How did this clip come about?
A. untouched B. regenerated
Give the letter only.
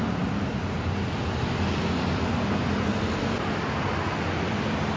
A